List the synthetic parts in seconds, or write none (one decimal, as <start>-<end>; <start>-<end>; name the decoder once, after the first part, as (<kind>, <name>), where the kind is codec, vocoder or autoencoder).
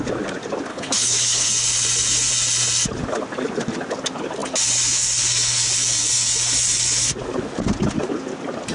0.7-1.5 (codec, HILCodec)